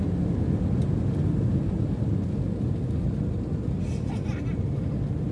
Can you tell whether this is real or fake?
real